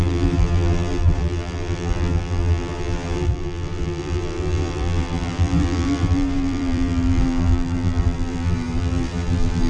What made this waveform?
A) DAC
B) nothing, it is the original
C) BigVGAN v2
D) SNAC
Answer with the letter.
C